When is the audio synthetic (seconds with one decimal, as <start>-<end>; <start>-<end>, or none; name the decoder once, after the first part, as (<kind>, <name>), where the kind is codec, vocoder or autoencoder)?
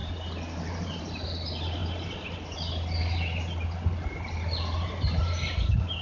0.0-1.0 (vocoder, BigVGAN v2); 1.8-5.2